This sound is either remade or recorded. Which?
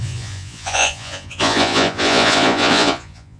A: remade